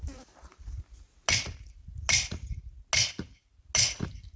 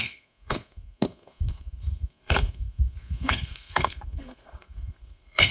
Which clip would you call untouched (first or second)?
first